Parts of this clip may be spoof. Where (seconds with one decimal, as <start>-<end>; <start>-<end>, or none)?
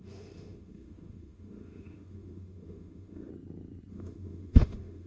0.0-3.3; 3.9-5.1